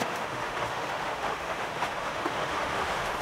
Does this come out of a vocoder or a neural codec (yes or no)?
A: yes